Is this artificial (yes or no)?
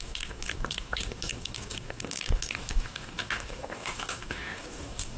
yes